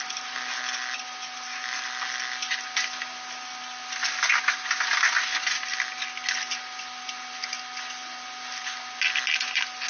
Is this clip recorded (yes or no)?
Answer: yes